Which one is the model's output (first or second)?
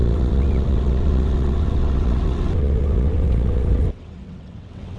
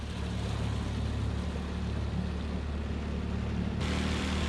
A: first